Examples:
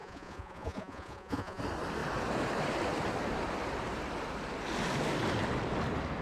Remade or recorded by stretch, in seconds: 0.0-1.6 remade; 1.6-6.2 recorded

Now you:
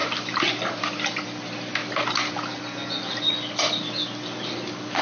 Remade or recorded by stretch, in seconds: 0.0-5.0 recorded